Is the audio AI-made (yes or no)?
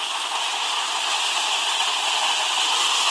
no